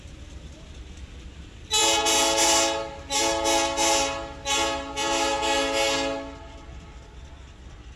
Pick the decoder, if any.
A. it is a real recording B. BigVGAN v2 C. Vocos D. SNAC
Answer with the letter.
A